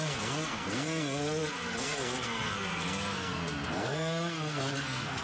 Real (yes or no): no